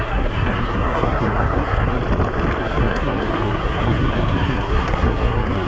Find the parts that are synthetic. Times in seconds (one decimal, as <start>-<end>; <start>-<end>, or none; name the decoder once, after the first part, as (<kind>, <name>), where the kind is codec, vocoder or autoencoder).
0.0-2.0 (codec, SNAC); 2.6-5.7